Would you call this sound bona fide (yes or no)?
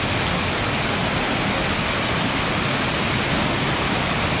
yes